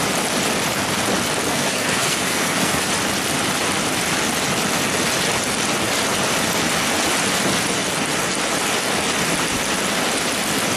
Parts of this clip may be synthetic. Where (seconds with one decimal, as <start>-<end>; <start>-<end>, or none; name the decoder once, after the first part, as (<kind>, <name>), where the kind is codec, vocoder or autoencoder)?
1.5-2.9 (codec, SNAC)